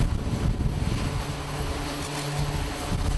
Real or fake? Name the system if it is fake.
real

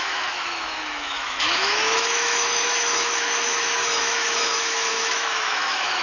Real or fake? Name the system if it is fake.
fake, autoencoder, DAC-VAE